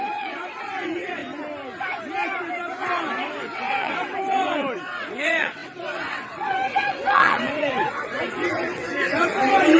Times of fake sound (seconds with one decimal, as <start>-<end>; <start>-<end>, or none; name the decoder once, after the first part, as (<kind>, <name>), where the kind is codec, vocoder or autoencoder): 0.0-1.2 (vocoder, WaveNeXt); 3.4-9.8